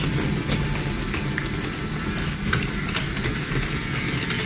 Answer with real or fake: real